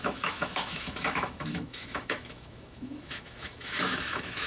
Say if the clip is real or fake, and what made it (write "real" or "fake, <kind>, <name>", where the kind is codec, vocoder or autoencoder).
fake, autoencoder, DAC-VAE